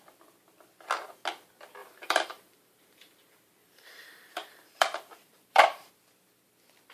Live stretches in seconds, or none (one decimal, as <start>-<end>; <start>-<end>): 0.0-1.8; 5.9-6.9